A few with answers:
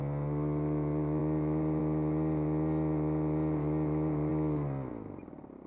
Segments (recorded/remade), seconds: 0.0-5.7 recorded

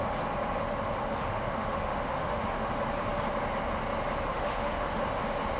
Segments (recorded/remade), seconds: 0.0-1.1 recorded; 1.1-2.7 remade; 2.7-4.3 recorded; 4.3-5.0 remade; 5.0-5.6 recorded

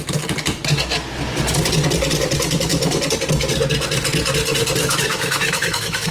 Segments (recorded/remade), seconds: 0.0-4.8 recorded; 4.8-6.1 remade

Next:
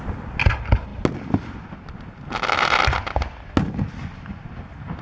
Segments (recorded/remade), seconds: 0.0-5.0 recorded